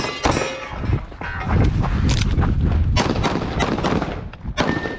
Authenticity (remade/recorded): recorded